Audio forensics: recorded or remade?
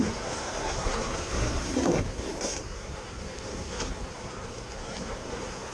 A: remade